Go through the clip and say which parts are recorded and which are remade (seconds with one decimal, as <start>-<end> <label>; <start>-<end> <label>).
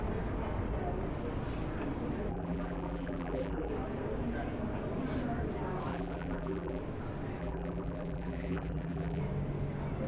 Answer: 0.0-2.3 recorded; 2.3-3.7 remade; 3.7-5.9 recorded; 5.9-6.8 remade; 6.8-7.4 recorded; 7.4-9.2 remade; 9.2-10.1 recorded